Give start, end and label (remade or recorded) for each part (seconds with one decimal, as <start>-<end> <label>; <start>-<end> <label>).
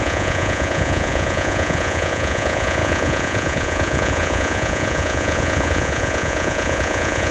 0.0-7.3 remade